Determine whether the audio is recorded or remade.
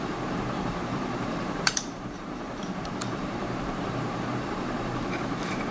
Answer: remade